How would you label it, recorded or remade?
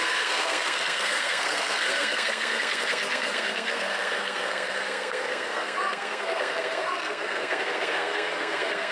remade